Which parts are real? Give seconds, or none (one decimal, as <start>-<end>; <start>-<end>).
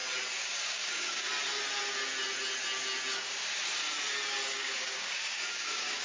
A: 0.0-0.6; 1.3-4.5